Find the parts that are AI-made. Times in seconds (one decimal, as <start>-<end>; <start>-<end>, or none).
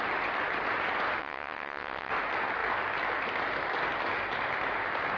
1.2-2.1